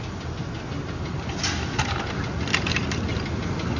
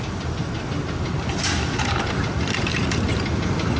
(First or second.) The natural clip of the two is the first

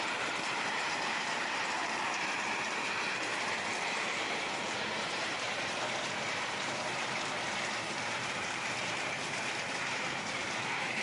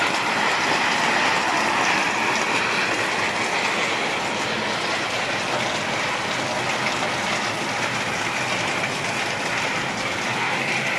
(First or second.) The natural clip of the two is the second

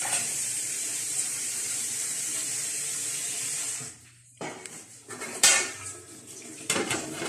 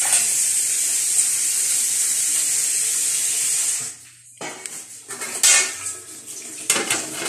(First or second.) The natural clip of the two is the second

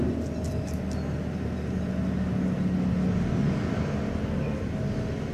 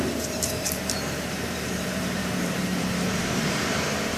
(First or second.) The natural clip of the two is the first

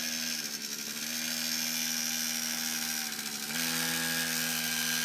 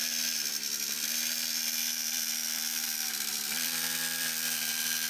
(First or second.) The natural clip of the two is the first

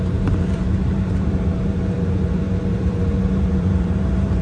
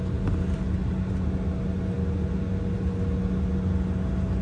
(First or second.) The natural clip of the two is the second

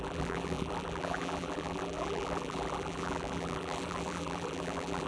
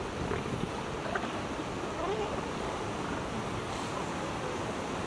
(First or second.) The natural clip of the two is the second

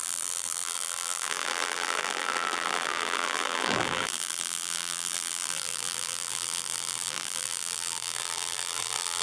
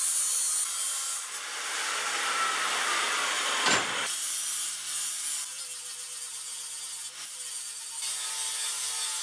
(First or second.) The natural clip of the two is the second